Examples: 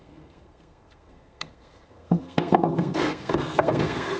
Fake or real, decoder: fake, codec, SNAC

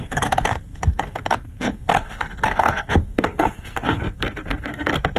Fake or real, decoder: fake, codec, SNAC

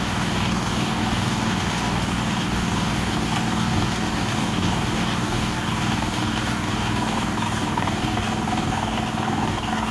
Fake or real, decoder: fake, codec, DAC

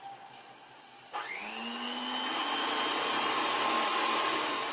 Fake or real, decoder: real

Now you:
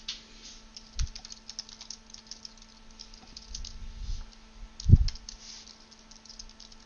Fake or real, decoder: real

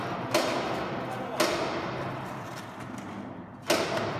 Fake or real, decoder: real